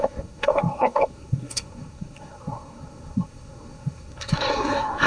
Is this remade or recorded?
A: remade